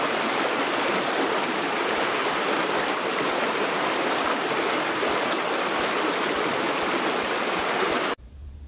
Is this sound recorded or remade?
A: recorded